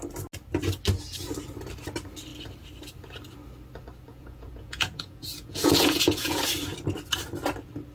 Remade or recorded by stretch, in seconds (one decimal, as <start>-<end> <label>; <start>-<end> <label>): 0.0-4.1 recorded; 4.1-6.5 remade; 6.5-7.9 recorded